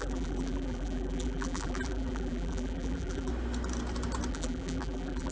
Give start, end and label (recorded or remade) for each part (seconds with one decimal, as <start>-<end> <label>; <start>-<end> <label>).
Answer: 0.0-3.3 remade; 3.3-4.3 recorded; 4.3-5.3 remade

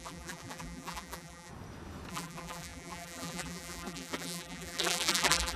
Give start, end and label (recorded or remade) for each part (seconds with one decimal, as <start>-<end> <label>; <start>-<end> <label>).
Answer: 0.0-1.5 remade; 1.5-2.1 recorded; 2.1-5.6 remade

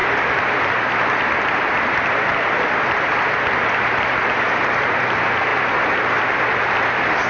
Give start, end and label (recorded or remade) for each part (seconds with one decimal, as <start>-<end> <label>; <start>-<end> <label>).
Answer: 0.0-2.3 remade; 2.3-4.1 recorded; 4.1-5.5 remade; 5.5-6.2 recorded; 6.2-7.3 remade

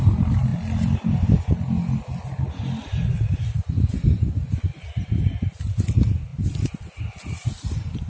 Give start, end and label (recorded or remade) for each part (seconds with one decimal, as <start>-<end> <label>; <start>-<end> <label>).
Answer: 0.0-8.1 recorded

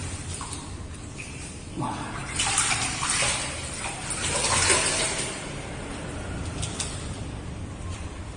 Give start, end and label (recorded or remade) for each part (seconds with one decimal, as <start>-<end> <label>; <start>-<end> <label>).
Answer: 0.0-8.4 remade

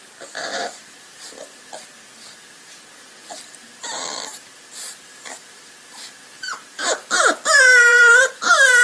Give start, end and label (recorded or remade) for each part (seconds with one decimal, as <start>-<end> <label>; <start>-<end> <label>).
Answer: 0.0-8.8 remade

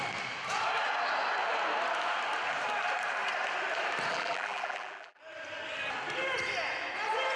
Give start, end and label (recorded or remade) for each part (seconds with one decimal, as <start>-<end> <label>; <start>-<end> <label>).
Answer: 0.0-4.1 recorded; 4.1-5.2 remade; 5.2-7.4 recorded

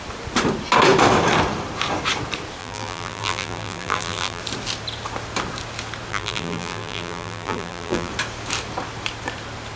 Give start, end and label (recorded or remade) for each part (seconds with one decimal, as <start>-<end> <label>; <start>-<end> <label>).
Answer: 0.0-2.6 recorded; 2.6-4.4 remade; 4.4-6.1 recorded; 6.1-8.1 remade; 8.1-9.8 recorded